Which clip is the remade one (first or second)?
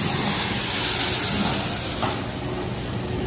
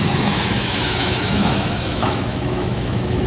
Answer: second